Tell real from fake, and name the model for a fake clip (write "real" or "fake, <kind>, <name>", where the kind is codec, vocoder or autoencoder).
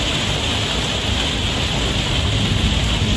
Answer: real